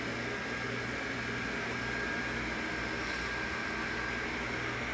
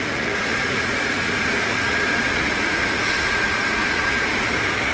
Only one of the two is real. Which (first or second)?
first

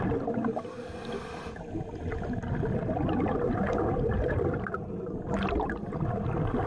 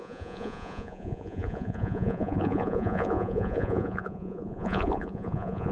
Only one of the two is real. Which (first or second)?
first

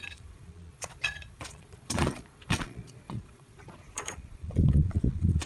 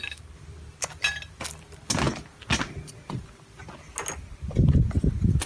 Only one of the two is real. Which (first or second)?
second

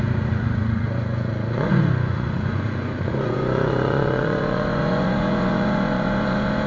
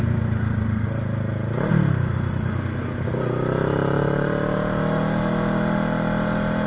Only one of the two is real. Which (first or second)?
second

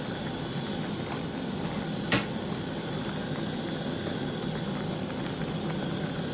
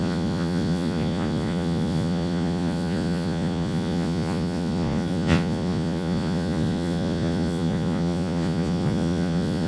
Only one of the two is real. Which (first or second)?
first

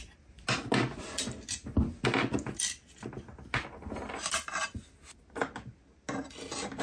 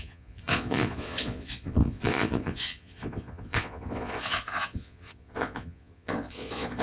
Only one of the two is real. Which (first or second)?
first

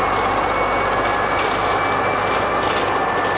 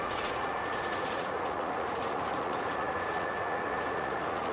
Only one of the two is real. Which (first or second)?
first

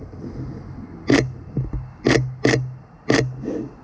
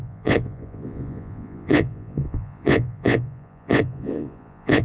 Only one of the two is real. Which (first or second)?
first